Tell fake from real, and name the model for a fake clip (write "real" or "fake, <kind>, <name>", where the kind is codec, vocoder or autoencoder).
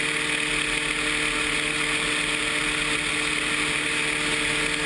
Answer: real